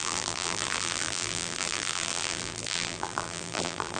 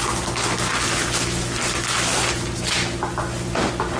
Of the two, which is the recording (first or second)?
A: second